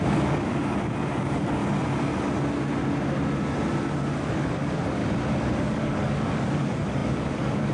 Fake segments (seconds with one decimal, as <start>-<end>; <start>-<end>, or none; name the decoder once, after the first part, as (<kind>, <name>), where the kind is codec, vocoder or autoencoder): 0.0-1.6 (codec, DAC); 4.3-5.0; 5.6-7.7